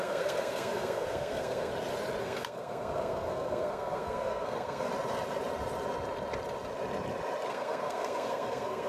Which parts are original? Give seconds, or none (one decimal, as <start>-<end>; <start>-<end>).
1.7-2.2; 4.9-7.5